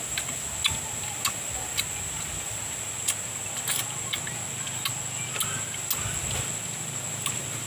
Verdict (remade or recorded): recorded